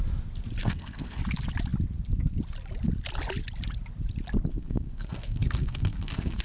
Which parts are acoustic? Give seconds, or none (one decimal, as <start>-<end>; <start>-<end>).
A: 0.0-0.6; 1.2-4.5

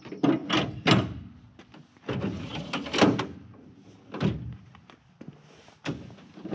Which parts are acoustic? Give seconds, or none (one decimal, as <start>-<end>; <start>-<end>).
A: 0.0-6.5